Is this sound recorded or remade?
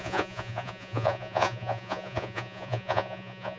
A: remade